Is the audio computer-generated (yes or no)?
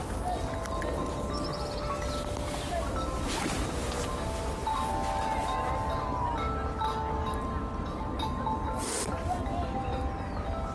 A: no